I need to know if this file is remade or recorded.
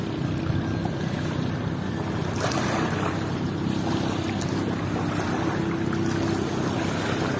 recorded